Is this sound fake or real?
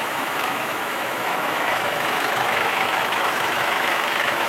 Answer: fake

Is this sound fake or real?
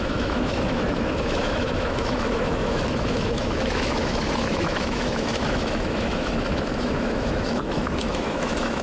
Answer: fake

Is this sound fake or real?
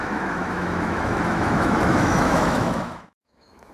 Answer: fake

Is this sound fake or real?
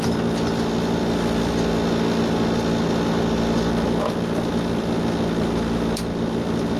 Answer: real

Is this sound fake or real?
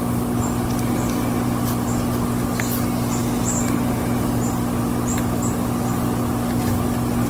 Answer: real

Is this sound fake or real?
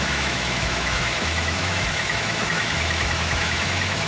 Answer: fake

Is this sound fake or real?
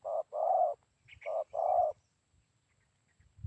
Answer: real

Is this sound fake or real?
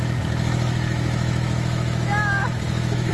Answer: fake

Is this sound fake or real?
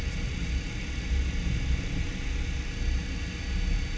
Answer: real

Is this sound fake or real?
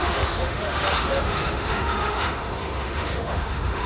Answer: fake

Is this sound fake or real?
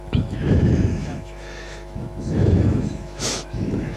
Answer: fake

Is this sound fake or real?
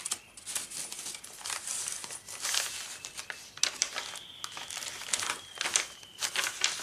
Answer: real